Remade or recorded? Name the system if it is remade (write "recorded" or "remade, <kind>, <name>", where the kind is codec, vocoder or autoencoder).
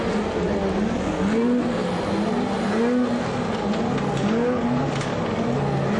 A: recorded